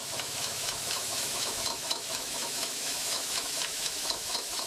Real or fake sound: fake